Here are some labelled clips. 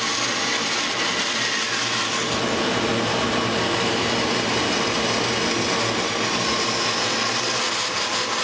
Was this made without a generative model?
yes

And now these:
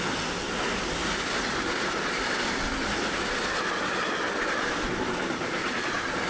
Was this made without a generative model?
yes